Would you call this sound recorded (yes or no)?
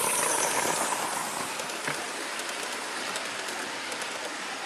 yes